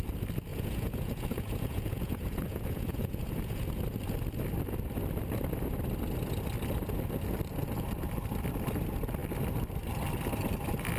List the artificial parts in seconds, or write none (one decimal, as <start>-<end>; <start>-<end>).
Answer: 0.5-3.6